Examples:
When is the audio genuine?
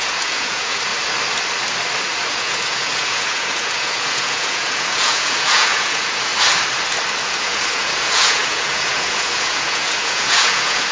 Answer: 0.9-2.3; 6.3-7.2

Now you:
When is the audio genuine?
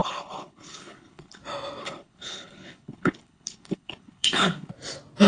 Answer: 1.4-1.8; 4.7-5.3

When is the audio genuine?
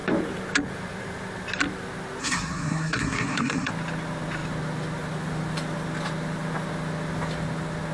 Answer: 0.0-2.2; 3.7-7.9